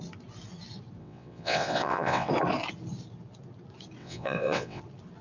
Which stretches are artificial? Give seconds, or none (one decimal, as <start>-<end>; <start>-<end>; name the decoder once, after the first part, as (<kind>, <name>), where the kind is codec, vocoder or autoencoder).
1.0-2.3 (vocoder, WaveNeXt); 4.0-4.8